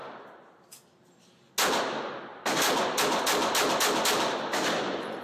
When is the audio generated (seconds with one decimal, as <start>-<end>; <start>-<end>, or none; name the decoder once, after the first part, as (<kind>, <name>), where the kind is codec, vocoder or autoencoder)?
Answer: none